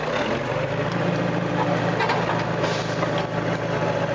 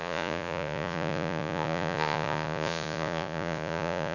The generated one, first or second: second